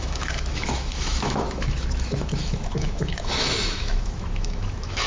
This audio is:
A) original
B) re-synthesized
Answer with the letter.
B